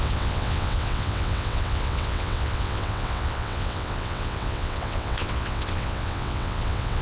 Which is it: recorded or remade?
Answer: remade